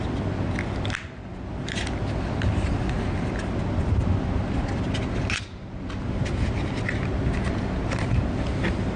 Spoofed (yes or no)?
no